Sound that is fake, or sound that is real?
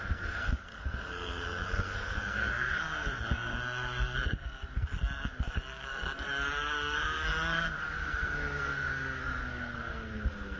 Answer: fake